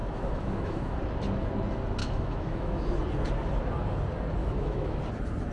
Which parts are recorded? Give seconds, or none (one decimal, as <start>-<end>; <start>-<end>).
1.0-2.0; 2.9-4.4; 5.0-5.5